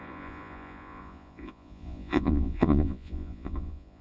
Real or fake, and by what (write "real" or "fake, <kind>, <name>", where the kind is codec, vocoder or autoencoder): fake, vocoder, Vocos